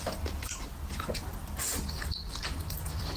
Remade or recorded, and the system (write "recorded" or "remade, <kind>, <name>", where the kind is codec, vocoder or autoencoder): recorded